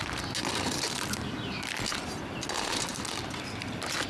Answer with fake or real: real